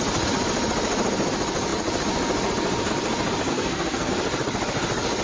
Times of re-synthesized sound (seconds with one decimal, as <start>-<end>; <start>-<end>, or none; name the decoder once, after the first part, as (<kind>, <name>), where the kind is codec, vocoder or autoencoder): 3.5-4.1 (codec, SNAC)

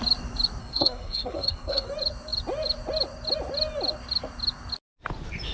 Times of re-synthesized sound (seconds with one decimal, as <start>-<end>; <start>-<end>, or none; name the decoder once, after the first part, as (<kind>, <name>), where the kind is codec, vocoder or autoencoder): 0.6-1.9 (codec, SNAC)

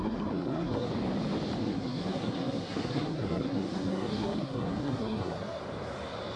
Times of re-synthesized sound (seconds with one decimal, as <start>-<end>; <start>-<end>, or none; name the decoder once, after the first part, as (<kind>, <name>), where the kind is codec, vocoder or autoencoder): 0.0-0.9 (codec, SNAC); 1.6-5.6

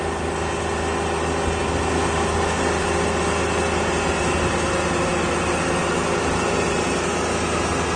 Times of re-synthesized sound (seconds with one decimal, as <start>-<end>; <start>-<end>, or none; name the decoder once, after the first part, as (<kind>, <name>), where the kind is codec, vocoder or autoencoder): none

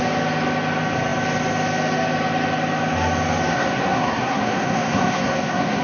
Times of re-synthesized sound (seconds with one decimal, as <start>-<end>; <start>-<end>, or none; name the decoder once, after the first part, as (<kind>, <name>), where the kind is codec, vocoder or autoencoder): 3.5-5.8 (codec, SNAC)

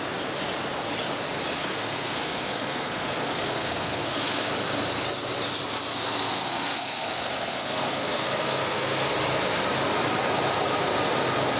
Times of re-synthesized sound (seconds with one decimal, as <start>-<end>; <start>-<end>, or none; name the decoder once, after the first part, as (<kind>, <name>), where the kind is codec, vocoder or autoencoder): 1.6-4.5 (codec, SNAC); 5.9-9.1

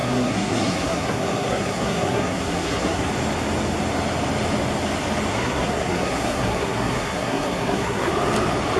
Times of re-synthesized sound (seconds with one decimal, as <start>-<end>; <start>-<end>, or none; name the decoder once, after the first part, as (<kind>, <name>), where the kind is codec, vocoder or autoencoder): 0.0-3.1 (codec, SNAC); 5.3-8.1

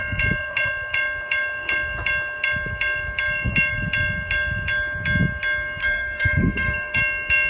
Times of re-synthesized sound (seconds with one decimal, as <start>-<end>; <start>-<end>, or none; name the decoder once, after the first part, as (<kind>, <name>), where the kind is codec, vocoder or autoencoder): 5.8-7.0 (codec, SNAC)